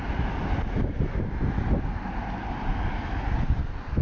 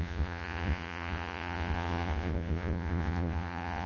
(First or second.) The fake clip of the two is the second